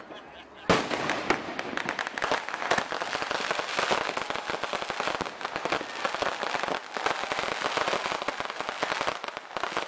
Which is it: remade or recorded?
recorded